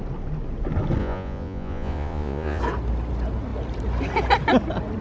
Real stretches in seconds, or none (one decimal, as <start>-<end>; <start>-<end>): 0.0-1.0; 2.6-5.0